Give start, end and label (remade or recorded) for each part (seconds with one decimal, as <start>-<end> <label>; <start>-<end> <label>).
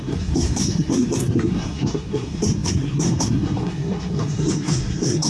0.0-5.3 remade